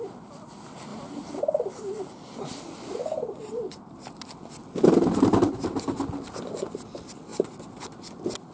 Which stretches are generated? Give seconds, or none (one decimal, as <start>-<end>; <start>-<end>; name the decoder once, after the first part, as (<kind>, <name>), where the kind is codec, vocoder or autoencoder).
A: 0.9-1.4 (vocoder, BigVGAN v2); 3.0-4.2